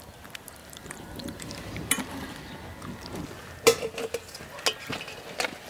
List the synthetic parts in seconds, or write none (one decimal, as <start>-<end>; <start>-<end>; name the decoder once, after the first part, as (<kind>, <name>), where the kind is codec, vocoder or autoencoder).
0.6-2.0 (vocoder, BigVGAN v2)